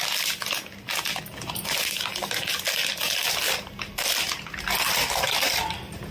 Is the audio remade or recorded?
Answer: recorded